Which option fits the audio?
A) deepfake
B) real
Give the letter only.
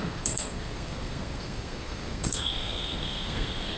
A